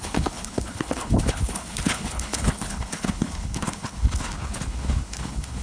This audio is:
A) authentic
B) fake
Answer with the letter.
B